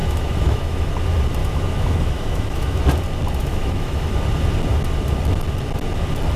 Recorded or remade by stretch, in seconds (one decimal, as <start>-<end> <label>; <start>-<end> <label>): 0.0-0.9 remade; 0.9-1.4 recorded; 1.4-2.8 remade; 2.8-3.4 recorded; 3.4-4.1 remade; 4.1-6.4 recorded